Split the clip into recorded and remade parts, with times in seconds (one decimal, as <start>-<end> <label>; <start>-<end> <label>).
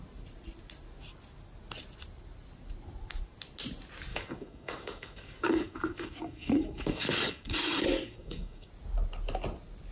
0.0-4.1 recorded; 4.1-8.7 remade; 8.7-9.9 recorded